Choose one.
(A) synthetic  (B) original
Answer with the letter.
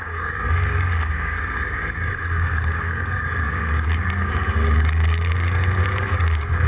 A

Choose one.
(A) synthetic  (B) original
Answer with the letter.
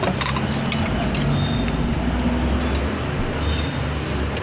B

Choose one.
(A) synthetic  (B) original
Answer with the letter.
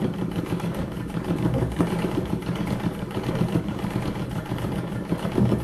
A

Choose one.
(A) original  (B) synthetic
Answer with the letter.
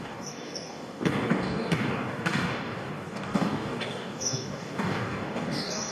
B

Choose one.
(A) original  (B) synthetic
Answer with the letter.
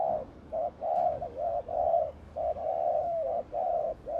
B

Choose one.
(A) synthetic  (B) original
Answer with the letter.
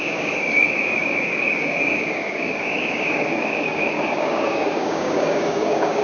A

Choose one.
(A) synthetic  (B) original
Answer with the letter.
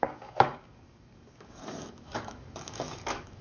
A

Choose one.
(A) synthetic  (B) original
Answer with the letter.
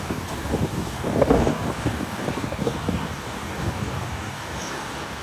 A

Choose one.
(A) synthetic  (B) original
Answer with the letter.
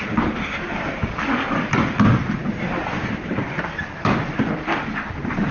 B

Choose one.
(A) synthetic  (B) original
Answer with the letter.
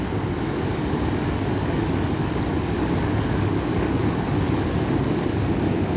A